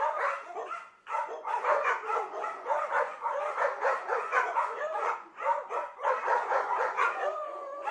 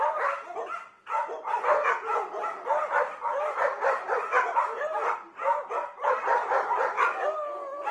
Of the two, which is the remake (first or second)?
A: first